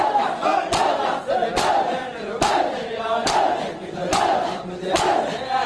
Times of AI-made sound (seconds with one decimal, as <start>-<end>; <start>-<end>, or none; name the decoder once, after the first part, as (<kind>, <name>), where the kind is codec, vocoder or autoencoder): 4.0-4.9 (vocoder, Vocos)